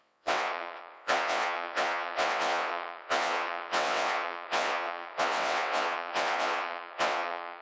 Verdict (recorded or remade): remade